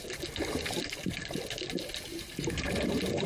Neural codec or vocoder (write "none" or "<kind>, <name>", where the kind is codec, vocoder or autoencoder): none